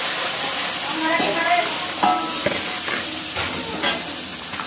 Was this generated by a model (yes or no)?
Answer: no